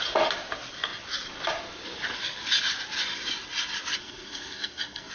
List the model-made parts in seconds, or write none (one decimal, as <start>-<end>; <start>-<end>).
4.0-5.1